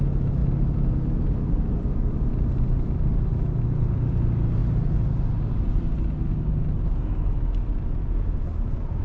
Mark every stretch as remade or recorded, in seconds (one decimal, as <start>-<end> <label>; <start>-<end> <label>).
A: 0.0-9.0 recorded